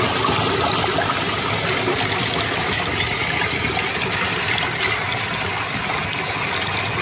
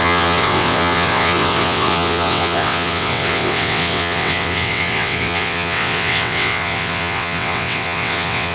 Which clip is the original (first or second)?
first